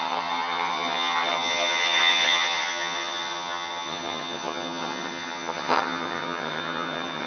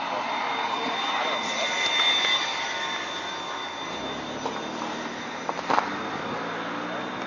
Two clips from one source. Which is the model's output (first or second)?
first